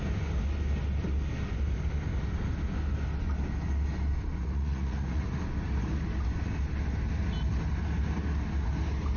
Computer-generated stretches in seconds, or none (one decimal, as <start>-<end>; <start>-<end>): 4.4-5.4